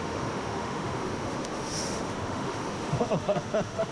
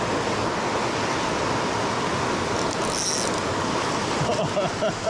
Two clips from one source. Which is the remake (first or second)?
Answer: first